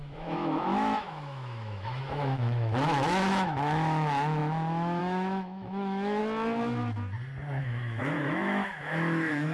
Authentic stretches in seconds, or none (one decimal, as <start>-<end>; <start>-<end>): 6.2-7.6